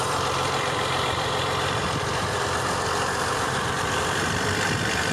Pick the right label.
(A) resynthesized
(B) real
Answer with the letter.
A